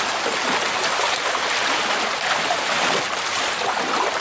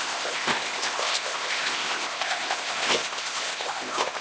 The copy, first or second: second